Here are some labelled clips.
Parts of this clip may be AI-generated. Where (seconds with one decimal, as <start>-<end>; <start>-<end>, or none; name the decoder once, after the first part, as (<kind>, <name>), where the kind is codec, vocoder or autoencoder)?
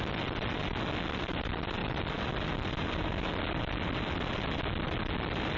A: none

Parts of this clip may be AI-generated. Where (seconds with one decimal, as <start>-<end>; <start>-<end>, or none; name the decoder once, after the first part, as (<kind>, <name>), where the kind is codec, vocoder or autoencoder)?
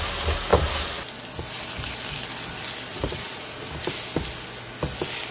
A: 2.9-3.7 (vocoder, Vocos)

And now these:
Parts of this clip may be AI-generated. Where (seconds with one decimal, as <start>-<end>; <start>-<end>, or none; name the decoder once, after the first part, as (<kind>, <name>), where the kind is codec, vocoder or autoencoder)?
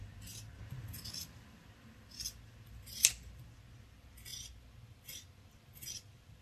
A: none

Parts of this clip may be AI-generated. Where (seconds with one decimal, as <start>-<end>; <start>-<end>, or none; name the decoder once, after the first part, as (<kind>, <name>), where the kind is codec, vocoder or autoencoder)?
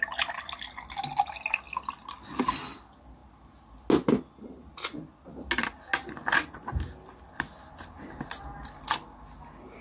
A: none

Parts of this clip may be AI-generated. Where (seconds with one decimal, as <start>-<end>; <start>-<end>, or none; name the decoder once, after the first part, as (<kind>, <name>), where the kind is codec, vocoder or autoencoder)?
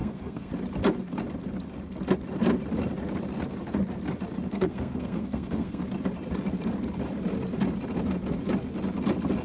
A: 0.0-0.5 (codec, SNAC); 4.5-5.8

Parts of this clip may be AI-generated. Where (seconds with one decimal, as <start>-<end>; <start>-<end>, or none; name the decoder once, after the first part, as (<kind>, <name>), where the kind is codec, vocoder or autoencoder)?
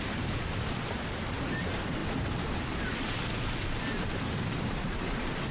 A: none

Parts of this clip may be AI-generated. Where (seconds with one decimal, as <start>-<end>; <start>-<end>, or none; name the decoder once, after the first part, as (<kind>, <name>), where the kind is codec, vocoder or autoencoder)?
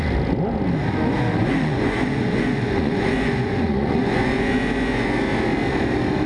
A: 1.4-5.2 (vocoder, Vocos)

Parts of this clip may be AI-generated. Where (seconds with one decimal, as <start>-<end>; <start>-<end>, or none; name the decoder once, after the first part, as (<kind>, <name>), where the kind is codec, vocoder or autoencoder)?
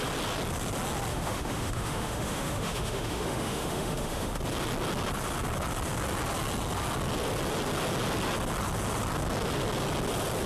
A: 1.1-4.4 (autoencoder, DAC-VAE)